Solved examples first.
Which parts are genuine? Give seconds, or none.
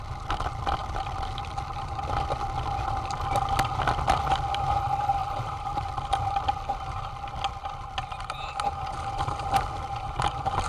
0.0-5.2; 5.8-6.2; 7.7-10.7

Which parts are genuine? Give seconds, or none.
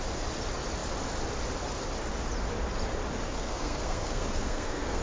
0.0-3.2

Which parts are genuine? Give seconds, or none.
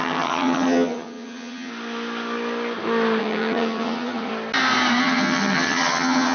1.7-3.2; 4.3-5.0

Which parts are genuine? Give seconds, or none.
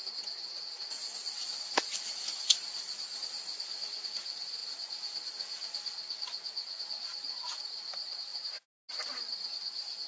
0.0-10.1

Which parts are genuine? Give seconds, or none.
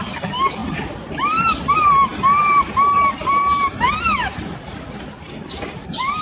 0.0-2.1; 5.6-6.2